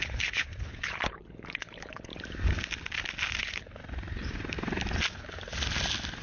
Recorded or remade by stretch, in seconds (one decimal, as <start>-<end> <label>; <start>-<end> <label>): 0.0-2.1 remade; 2.1-3.4 recorded; 3.4-3.8 remade; 3.8-5.1 recorded; 5.1-5.5 remade; 5.5-6.2 recorded